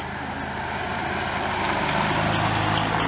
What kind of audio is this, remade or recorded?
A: recorded